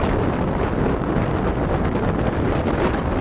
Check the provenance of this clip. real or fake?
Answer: real